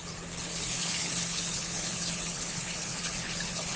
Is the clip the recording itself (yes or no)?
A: no